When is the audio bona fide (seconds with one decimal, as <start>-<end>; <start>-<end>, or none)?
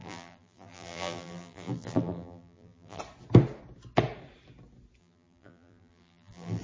3.0-5.0